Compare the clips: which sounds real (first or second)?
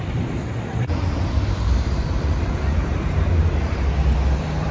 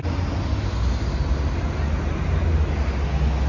second